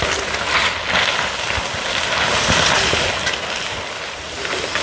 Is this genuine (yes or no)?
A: yes